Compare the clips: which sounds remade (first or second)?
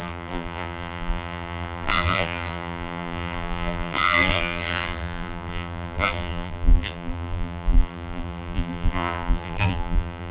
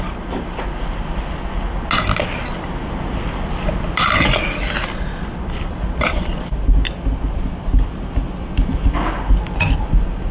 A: first